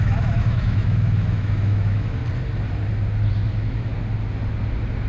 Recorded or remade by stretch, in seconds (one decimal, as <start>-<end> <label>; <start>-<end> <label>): 0.0-2.2 remade; 2.2-3.3 recorded; 3.3-3.9 remade; 3.9-5.1 recorded